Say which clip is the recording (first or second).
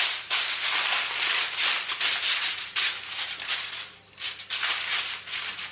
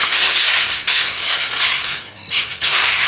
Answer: first